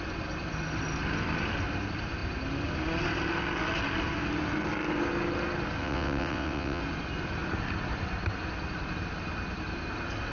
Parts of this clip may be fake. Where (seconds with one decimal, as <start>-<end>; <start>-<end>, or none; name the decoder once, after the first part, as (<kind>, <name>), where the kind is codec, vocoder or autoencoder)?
5.8-6.8 (vocoder, WaveNeXt)